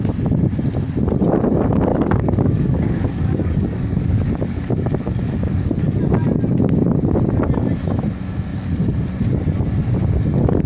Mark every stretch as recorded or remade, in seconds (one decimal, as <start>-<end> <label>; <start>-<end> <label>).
0.0-1.9 recorded; 1.9-6.0 remade; 6.0-8.5 recorded; 8.5-9.1 remade; 9.1-10.7 recorded